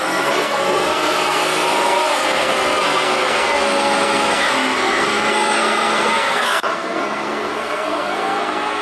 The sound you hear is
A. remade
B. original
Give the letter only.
A